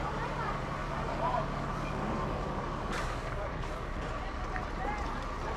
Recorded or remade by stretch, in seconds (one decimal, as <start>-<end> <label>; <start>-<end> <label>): 0.0-0.8 recorded; 0.8-4.2 remade; 4.2-5.6 recorded